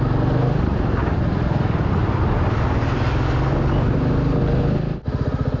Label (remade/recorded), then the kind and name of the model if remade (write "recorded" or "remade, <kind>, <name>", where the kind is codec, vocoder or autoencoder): recorded